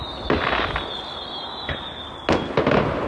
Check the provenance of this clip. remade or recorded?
recorded